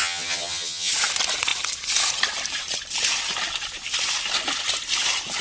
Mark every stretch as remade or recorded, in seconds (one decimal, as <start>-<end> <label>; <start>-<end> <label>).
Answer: 0.0-0.9 remade; 0.9-5.4 recorded